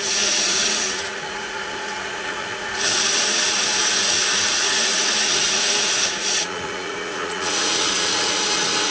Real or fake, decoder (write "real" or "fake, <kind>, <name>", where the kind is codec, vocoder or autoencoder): fake, vocoder, Vocos